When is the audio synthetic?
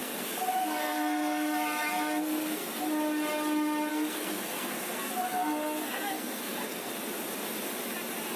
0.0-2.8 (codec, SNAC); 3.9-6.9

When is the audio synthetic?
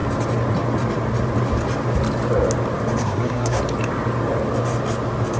3.0-3.6 (codec, SNAC)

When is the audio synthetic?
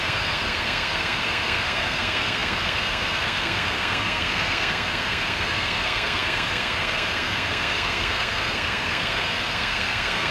0.0-10.3 (codec, SNAC)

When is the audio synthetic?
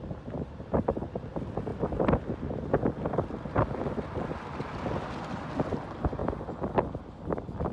none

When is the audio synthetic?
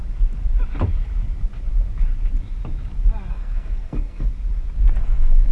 3.3-4.3 (codec, SNAC); 5.0-5.5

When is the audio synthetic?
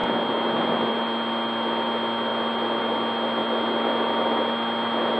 none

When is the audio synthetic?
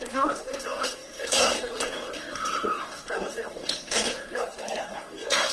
0.0-5.5 (codec, SNAC)